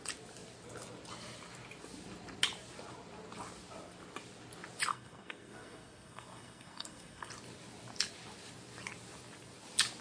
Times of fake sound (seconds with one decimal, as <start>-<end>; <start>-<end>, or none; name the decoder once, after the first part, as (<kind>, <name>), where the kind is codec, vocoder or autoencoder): 4.9-7.3 (codec, SNAC)